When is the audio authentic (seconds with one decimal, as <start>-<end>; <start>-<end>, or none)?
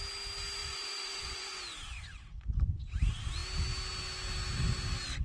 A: 0.0-0.6; 1.6-5.2